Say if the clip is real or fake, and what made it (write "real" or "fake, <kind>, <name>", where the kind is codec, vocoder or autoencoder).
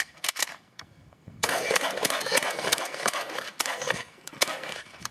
fake, codec, SNAC